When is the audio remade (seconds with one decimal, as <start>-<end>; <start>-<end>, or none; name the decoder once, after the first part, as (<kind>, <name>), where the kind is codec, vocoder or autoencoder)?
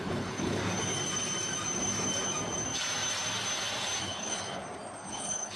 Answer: 0.0-0.6 (codec, HILCodec); 4.0-4.6; 5.1-5.6